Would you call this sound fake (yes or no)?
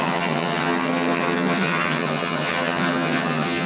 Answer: yes